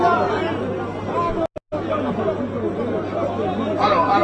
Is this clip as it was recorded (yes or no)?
yes